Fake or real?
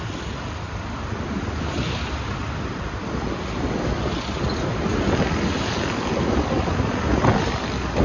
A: real